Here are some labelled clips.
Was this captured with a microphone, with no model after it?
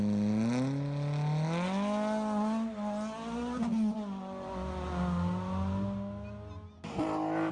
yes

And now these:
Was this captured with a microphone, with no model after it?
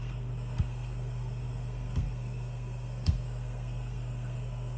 no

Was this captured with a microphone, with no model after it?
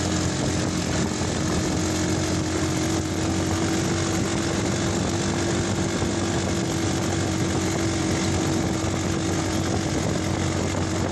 yes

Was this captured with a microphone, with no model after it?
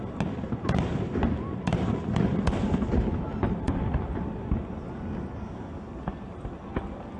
yes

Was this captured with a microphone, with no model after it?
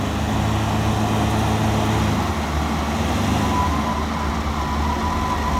yes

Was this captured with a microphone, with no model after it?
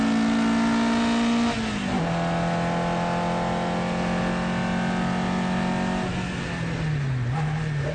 yes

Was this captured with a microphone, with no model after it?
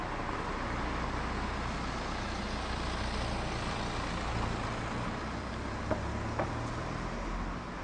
yes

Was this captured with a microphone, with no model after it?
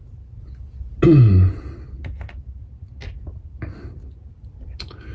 yes